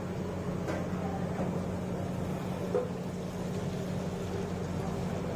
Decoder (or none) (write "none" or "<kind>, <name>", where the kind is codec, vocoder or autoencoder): none